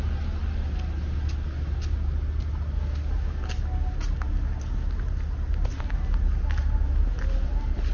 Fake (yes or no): no